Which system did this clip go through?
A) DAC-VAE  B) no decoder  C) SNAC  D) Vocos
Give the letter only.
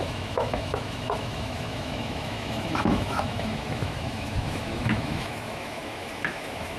A